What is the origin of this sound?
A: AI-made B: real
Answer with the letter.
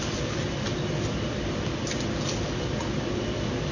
B